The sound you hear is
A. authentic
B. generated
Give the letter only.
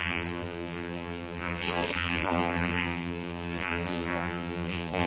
B